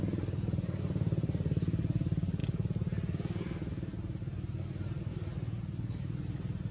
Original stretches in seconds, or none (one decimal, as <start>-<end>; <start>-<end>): 0.0-6.7